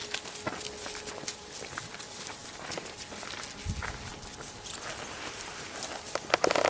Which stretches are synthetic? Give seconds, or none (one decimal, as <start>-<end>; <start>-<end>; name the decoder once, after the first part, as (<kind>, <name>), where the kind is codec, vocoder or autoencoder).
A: none